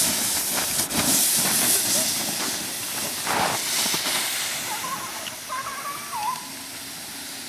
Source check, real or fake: real